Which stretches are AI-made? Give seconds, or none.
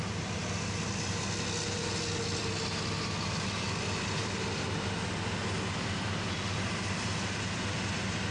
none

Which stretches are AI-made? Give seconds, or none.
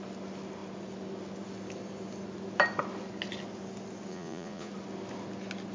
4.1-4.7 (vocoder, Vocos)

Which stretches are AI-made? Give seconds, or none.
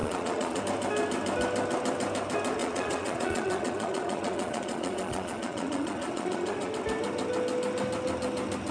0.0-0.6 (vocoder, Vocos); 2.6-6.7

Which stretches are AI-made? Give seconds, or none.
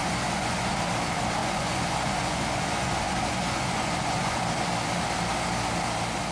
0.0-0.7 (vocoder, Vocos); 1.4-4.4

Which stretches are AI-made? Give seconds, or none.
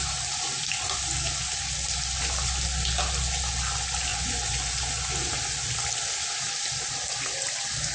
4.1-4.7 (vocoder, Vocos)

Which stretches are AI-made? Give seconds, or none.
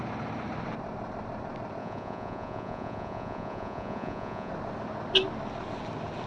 1.8-4.5 (vocoder, Vocos)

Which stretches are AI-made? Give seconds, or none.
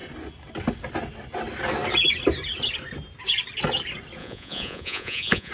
4.2-5.5 (vocoder, Vocos)